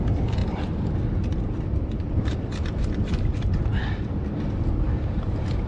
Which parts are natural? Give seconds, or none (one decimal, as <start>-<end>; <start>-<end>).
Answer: 0.0-0.4; 3.8-5.7